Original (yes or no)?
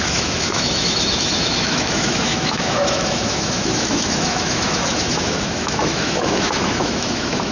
no